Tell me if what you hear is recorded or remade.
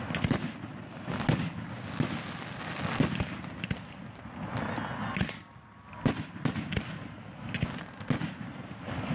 recorded